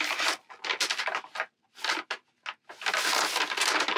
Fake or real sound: real